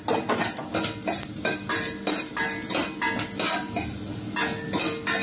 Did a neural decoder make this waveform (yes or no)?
no